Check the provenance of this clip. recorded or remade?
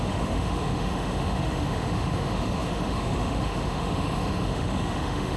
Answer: remade